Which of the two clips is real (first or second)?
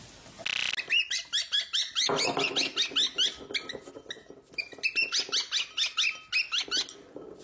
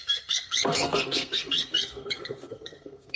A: first